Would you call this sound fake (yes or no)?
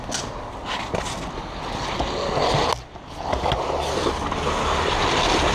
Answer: no